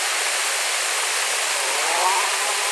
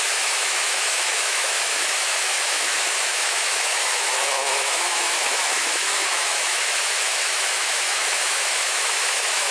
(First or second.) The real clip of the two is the first